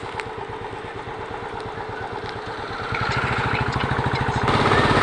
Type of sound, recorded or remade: recorded